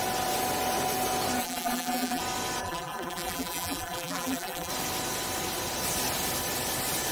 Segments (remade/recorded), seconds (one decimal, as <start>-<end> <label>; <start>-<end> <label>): 0.0-1.4 recorded; 1.4-2.2 remade; 2.2-2.6 recorded; 2.6-4.7 remade; 4.7-7.1 recorded